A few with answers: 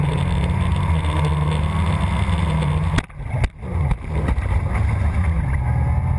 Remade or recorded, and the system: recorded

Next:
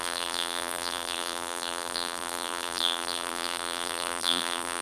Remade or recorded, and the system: remade, vocoder, BigVGAN v2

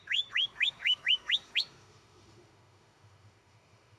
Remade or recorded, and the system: remade, autoencoder, DAC-VAE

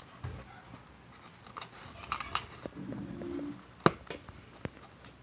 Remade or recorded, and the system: recorded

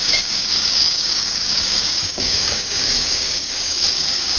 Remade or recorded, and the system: remade, codec, DAC